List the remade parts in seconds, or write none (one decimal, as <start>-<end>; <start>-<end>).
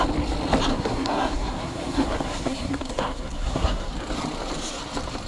0.7-3.9